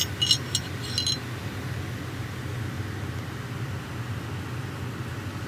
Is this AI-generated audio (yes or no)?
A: no